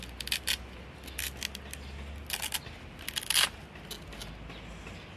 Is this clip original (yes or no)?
yes